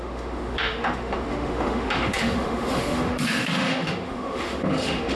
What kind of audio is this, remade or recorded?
remade